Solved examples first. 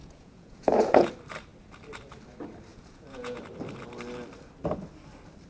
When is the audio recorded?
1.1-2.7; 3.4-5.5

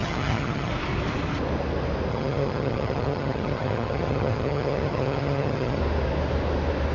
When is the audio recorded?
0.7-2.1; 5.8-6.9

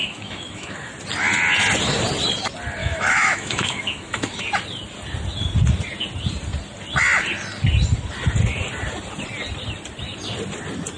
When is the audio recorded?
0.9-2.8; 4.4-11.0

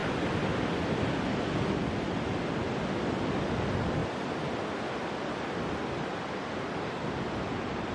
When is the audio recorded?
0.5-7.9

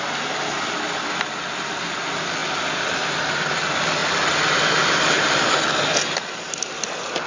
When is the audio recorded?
0.0-7.3

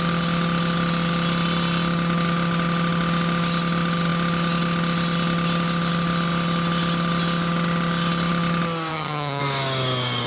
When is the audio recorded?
0.0-8.9; 9.4-10.3